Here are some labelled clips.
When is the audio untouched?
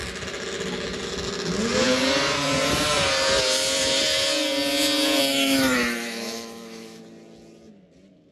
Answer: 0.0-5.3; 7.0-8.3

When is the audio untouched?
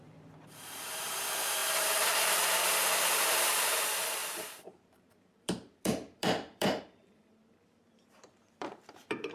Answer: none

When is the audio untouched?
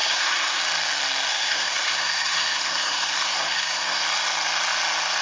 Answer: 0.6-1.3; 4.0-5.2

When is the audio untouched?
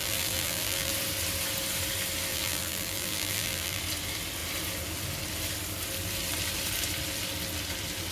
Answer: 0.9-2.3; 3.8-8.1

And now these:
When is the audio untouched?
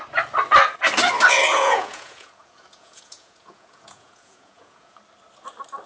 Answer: 0.0-1.5; 5.0-5.9